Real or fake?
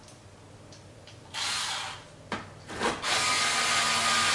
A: real